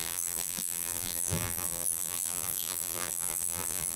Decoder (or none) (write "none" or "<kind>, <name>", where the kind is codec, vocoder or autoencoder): vocoder, BigVGAN v2